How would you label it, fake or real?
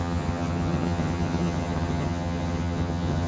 fake